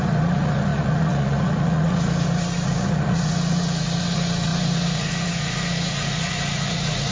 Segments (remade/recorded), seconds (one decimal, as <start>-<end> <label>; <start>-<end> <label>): 0.0-7.1 remade